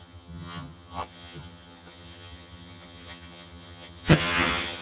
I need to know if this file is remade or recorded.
remade